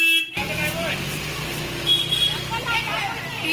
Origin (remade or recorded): recorded